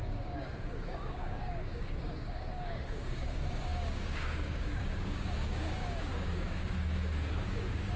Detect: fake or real fake